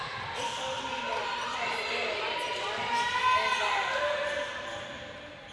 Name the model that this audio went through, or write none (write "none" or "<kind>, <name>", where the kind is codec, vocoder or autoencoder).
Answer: none